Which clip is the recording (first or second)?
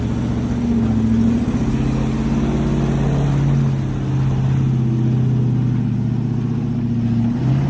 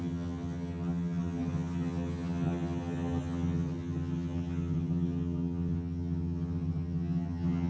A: first